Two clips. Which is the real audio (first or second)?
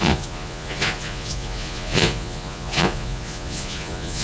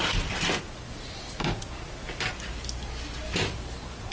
second